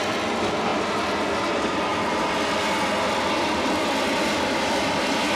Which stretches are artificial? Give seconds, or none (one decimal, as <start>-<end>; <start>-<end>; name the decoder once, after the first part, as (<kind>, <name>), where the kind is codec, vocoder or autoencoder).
none